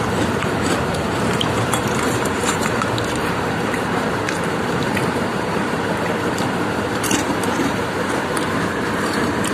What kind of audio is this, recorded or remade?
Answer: remade